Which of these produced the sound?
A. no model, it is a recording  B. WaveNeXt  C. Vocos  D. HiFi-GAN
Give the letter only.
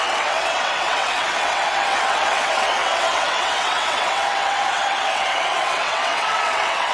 B